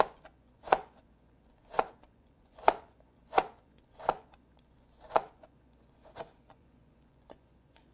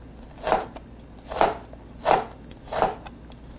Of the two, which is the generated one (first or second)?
first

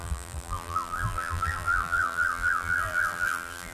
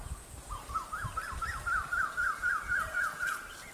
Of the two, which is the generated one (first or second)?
first